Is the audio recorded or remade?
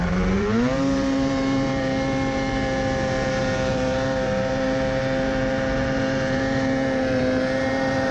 remade